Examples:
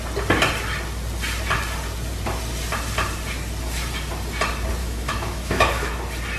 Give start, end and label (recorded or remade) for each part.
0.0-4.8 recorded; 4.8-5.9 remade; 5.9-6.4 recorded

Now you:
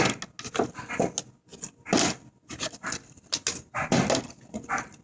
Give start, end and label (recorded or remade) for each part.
0.0-5.0 recorded

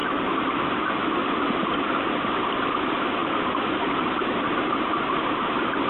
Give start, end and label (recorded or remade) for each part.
0.0-5.9 recorded

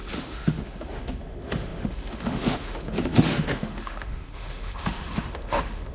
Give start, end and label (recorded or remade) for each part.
0.0-5.9 remade

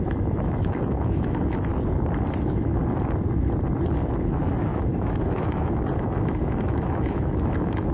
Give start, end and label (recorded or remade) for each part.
0.0-1.7 remade; 1.7-2.4 recorded; 2.4-2.8 remade; 2.8-4.2 recorded; 4.2-7.9 remade